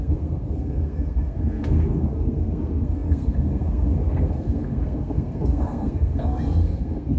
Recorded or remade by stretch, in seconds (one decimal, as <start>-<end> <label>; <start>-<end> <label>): 0.0-7.2 remade